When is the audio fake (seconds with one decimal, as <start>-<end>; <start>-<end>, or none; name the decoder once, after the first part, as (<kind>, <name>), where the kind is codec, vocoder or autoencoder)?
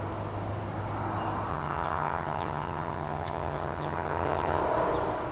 1.5-4.6 (vocoder, HiFi-GAN)